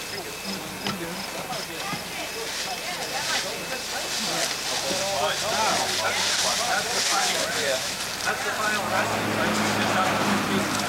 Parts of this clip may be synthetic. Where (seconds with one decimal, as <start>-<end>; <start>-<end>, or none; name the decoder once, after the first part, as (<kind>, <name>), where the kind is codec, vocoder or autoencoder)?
7.1-8.0 (autoencoder, DAC-VAE)